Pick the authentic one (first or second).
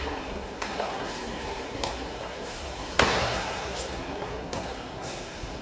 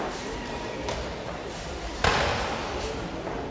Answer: second